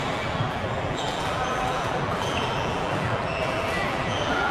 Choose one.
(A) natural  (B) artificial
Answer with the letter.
B